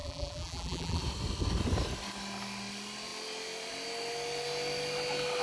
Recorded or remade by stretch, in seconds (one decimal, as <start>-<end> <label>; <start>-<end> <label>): 0.0-1.0 remade; 1.0-5.4 recorded